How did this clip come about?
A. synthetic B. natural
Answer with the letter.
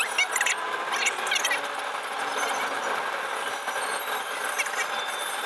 B